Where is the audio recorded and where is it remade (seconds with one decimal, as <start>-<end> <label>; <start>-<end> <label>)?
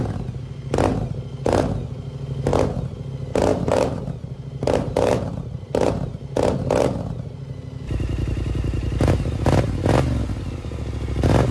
0.0-3.5 recorded; 3.5-5.9 remade; 5.9-11.5 recorded